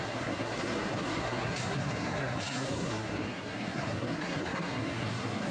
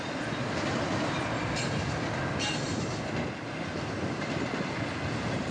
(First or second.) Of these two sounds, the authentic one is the second